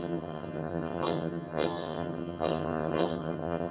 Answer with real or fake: fake